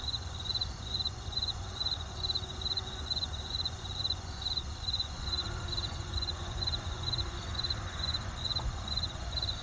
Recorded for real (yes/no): no